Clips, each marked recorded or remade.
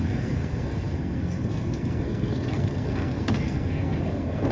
remade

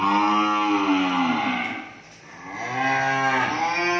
recorded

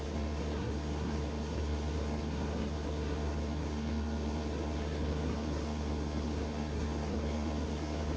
remade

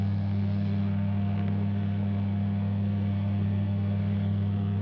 remade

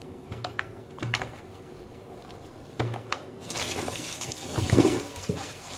remade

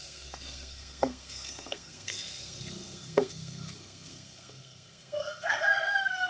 remade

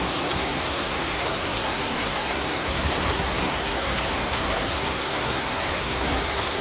remade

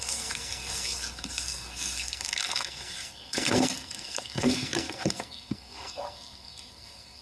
remade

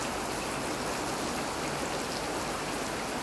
recorded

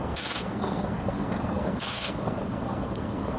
remade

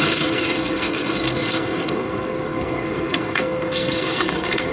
remade